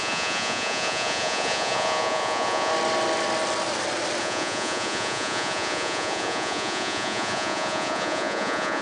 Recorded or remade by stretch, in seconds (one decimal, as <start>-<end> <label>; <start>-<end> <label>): 0.0-2.7 remade; 2.7-4.2 recorded; 4.2-8.8 remade